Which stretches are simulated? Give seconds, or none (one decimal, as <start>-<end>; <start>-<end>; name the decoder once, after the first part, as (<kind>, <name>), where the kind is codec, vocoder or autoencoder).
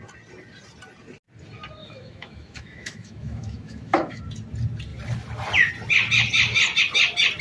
1.8-4.2 (autoencoder, DAC-VAE)